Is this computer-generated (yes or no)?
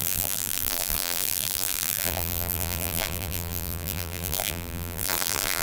yes